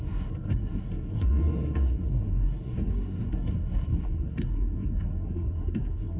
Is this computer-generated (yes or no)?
yes